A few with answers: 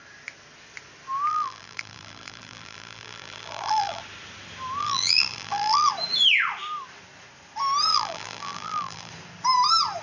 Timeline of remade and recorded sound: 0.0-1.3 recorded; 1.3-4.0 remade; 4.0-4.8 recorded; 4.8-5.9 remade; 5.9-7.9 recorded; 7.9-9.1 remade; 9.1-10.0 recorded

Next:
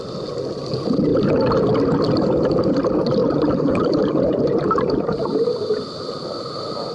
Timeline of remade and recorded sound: 0.0-3.2 recorded; 3.2-6.3 remade; 6.3-6.9 recorded

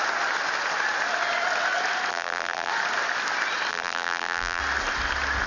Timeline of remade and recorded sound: 0.0-2.1 recorded; 2.1-2.7 remade; 2.7-3.7 recorded; 3.7-4.6 remade; 4.6-5.5 recorded

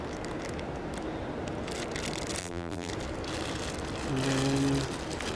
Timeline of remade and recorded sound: 0.0-2.4 recorded; 2.4-2.9 remade; 2.9-5.4 recorded

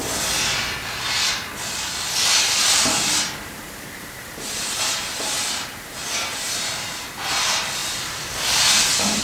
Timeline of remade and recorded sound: 0.0-3.4 recorded; 3.4-9.2 remade